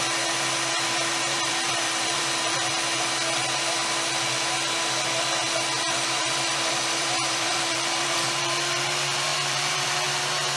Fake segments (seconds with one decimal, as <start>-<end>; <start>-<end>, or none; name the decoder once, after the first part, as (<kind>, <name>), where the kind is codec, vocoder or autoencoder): 1.1-2.7 (vocoder, BigVGAN v2); 6.2-8.6; 9.3-9.9